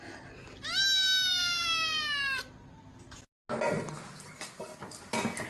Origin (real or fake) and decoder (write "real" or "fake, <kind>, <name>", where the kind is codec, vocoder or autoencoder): real